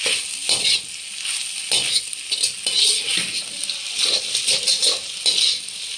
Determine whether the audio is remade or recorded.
recorded